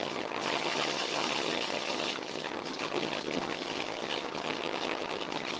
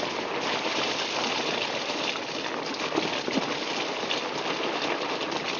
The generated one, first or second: first